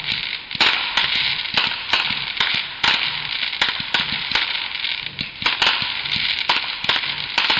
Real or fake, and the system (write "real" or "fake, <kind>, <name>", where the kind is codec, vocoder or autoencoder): real